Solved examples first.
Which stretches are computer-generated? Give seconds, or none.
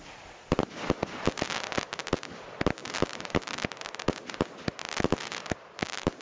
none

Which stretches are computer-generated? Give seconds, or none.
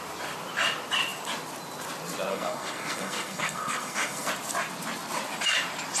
2.3-4.3 (codec, SNAC)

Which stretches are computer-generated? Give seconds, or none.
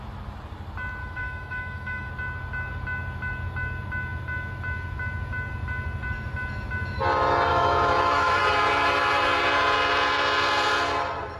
1.0-2.1 (autoencoder, DAC-VAE); 7.5-8.4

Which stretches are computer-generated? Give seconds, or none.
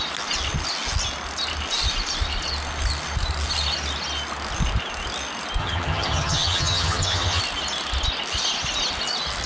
5.6-7.4 (vocoder, HiFi-GAN)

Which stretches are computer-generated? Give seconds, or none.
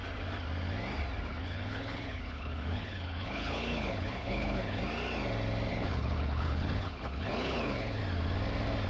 1.3-4.8 (codec, HILCodec); 5.7-8.0